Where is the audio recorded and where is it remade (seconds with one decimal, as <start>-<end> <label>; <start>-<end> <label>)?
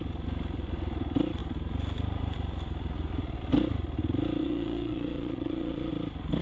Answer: 0.0-4.4 recorded; 4.4-5.9 remade; 5.9-6.4 recorded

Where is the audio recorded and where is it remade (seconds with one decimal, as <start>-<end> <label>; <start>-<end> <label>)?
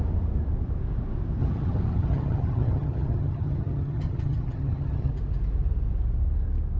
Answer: 0.0-1.4 recorded; 1.4-5.1 remade; 5.1-6.8 recorded